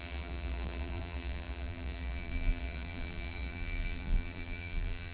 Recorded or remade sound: remade